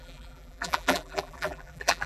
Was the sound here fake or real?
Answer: fake